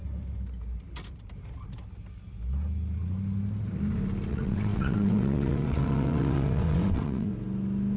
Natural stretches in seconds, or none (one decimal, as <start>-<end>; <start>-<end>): 0.0-4.3; 7.3-8.0

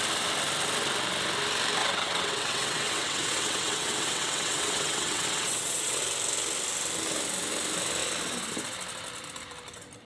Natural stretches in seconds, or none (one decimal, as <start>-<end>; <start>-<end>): 0.0-1.8; 6.0-10.0

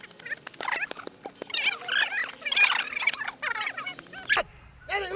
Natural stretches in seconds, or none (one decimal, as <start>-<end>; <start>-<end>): 0.0-5.2